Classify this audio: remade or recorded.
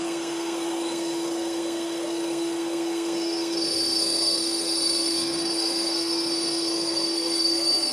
remade